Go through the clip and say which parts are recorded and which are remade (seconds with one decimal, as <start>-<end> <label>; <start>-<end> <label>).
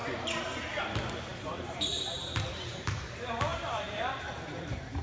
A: 0.0-0.8 recorded; 0.8-5.0 remade